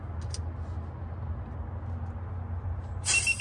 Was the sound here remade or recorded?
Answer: recorded